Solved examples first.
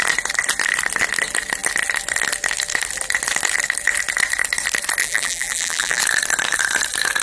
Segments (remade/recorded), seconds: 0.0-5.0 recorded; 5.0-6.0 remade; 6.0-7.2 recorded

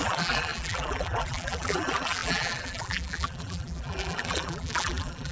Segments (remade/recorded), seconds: 0.0-5.3 remade

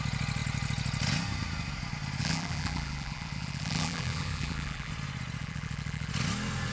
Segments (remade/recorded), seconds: 0.0-2.2 recorded; 2.2-4.9 remade; 4.9-5.4 recorded; 5.4-6.1 remade; 6.1-6.7 recorded

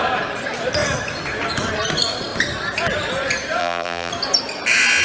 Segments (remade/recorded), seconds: 0.0-3.6 recorded; 3.6-4.1 remade; 4.1-5.0 recorded

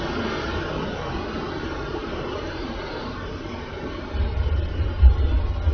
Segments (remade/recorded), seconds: 0.0-1.9 recorded; 1.9-5.3 remade; 5.3-5.7 recorded